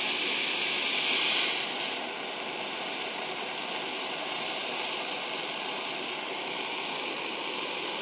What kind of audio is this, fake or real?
real